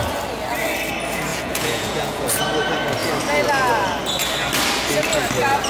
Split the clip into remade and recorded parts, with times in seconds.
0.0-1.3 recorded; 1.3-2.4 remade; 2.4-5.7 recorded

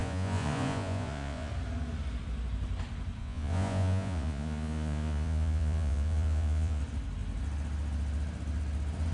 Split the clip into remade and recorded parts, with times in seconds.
0.0-1.5 remade; 1.5-3.2 recorded; 3.2-6.8 remade; 6.8-9.1 recorded

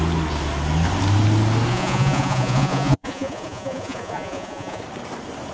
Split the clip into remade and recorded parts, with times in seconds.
0.0-1.7 recorded; 1.7-4.8 remade; 4.8-5.5 recorded